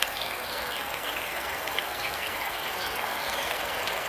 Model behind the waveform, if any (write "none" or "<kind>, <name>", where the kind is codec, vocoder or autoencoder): codec, SNAC